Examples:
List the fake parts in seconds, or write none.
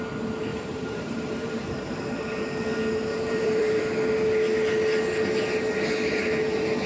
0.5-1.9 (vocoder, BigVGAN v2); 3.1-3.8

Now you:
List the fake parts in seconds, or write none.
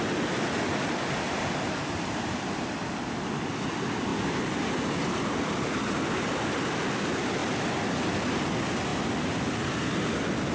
8.9-9.4 (vocoder, BigVGAN v2)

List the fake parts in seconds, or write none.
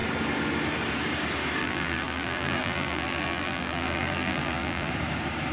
1.6-4.9 (vocoder, BigVGAN v2)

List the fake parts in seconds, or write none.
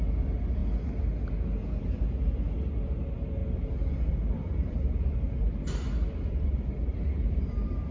3.4-7.5 (vocoder, BigVGAN v2)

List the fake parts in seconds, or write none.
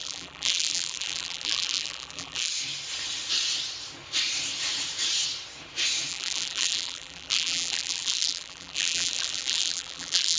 0.0-2.5 (vocoder, BigVGAN v2); 6.1-10.4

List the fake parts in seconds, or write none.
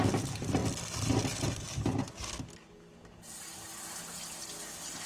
none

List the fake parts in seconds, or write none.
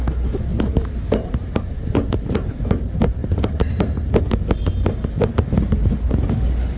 0.5-2.8 (vocoder, BigVGAN v2); 3.2-4.2